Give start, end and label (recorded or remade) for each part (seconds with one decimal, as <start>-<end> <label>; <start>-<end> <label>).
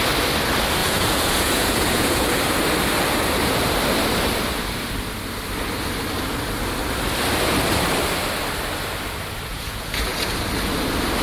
0.0-0.8 recorded; 0.8-2.4 remade; 2.4-9.5 recorded; 9.5-10.3 remade; 10.3-11.2 recorded